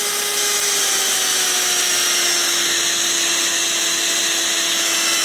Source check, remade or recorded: recorded